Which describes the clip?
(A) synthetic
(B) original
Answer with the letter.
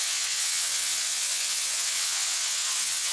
A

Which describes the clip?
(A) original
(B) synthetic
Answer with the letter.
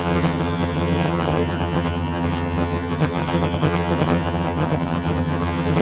B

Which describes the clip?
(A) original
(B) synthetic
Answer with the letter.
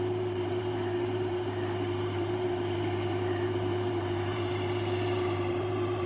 B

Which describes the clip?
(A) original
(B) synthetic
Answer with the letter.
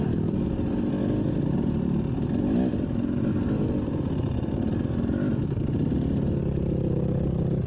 A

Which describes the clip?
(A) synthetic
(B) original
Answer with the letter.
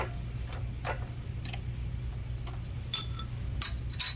B